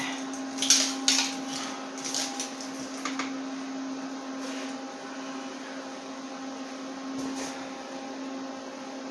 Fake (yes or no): no